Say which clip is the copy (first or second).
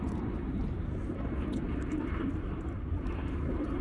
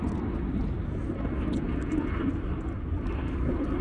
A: first